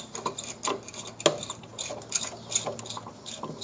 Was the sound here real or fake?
real